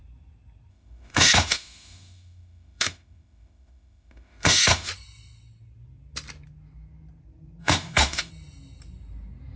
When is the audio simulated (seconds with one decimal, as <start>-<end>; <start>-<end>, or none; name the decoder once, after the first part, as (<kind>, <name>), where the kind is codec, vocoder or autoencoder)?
0.7-4.9 (autoencoder, DAC-VAE); 7.6-8.3